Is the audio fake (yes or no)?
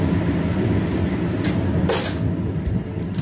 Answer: yes